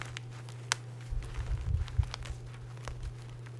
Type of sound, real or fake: real